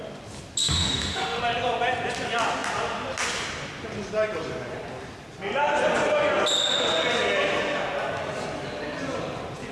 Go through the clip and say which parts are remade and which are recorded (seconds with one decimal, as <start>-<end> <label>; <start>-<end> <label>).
0.0-0.6 recorded; 0.6-1.4 remade; 1.4-9.7 recorded